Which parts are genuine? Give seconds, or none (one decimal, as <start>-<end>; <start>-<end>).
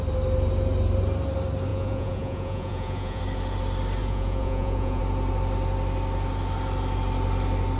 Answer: 0.0-1.7; 3.2-4.0; 5.0-7.8